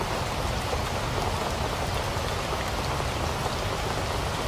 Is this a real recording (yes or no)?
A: yes